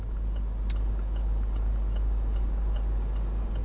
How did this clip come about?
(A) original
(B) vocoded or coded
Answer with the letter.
A